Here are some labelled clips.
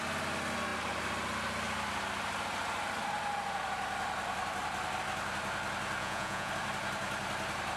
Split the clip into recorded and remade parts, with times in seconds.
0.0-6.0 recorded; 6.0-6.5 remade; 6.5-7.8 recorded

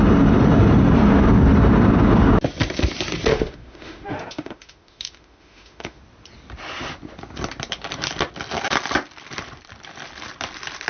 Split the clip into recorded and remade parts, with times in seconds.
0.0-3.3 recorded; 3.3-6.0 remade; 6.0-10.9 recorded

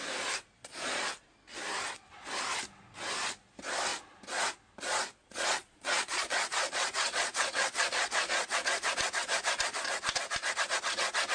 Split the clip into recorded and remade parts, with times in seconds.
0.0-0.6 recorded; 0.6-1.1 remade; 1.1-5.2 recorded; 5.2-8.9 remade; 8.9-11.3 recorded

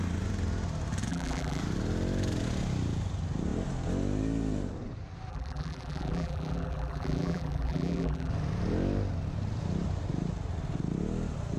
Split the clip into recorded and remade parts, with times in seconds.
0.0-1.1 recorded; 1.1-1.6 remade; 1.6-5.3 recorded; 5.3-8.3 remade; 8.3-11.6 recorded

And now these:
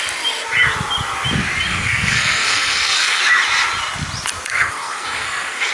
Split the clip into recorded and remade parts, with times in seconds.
0.0-1.7 recorded; 1.7-3.2 remade; 3.2-4.5 recorded; 4.5-5.7 remade

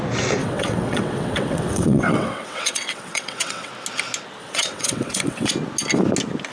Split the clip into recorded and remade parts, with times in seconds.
0.0-0.4 recorded; 0.4-3.7 remade; 3.7-4.4 recorded; 4.4-5.5 remade; 5.5-6.5 recorded